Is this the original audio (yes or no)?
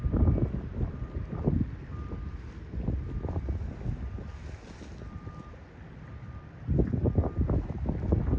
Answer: yes